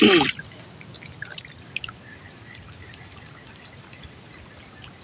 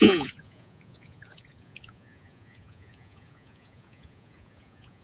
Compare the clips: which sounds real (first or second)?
first